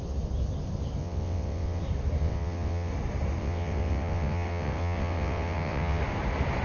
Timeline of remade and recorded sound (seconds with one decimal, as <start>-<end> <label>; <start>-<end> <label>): 0.0-1.0 recorded; 1.0-1.8 remade; 1.8-2.2 recorded; 2.2-2.9 remade; 2.9-3.4 recorded; 3.4-6.0 remade; 6.0-6.6 recorded